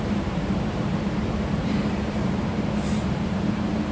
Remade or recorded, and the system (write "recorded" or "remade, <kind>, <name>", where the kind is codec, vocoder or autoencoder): remade, vocoder, BigVGAN v2